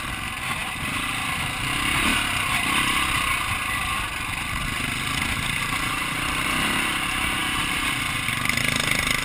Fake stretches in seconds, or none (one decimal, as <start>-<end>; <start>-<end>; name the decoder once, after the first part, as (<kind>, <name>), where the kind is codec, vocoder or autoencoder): none